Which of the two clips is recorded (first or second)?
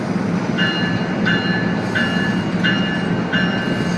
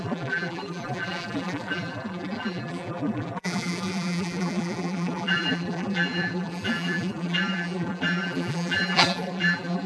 first